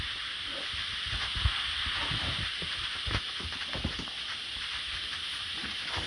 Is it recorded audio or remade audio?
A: recorded